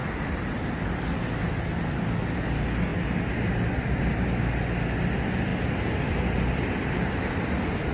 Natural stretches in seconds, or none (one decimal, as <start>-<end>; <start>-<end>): 0.7-5.5; 7.3-7.9